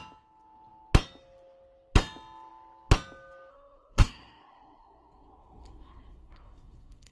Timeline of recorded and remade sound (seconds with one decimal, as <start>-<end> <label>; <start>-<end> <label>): 0.0-3.5 recorded; 3.5-7.1 remade